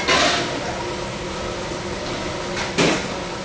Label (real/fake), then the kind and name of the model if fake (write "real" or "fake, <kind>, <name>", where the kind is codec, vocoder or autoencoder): real